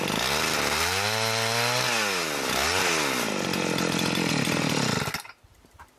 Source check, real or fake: real